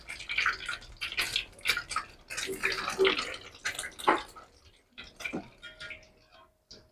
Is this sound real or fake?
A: real